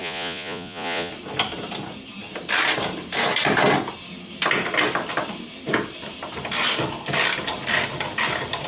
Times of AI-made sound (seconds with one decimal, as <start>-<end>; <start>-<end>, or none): 0.0-1.1